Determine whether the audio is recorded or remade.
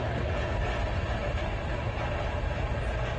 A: recorded